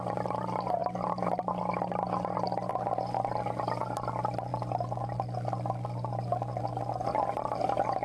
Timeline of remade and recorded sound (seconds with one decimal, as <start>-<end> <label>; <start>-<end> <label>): 0.0-8.0 recorded